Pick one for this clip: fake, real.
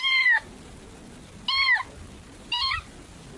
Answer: real